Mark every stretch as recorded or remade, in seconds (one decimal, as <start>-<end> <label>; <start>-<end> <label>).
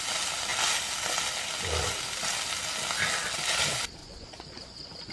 0.0-4.0 recorded; 4.0-5.1 remade